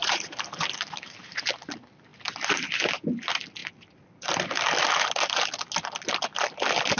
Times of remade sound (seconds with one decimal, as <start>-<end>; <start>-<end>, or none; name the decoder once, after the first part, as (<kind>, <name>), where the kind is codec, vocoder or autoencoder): 0.0-1.4 (vocoder, BigVGAN v2)